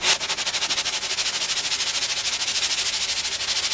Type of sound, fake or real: real